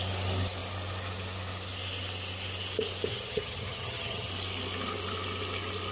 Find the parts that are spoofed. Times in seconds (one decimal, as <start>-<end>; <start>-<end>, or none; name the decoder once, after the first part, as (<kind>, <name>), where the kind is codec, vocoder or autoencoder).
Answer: 3.1-4.3 (vocoder, HiFi-GAN)